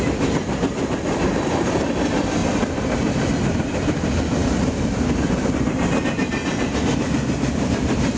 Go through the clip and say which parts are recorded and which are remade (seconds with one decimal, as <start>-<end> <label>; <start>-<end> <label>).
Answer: 0.0-8.2 recorded